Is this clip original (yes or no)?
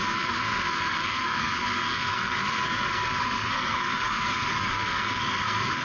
no